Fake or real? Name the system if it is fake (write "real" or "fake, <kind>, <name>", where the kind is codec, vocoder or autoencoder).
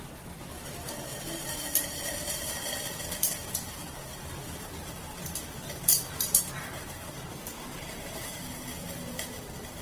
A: fake, vocoder, BigVGAN v2